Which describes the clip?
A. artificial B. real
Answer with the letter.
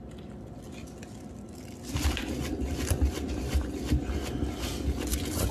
B